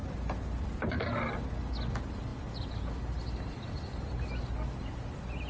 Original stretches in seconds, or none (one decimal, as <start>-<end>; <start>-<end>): 0.0-5.5